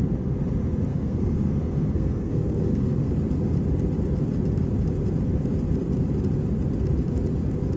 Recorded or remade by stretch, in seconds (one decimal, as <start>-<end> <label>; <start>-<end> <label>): 0.0-0.9 recorded; 0.9-3.1 remade; 3.1-7.8 recorded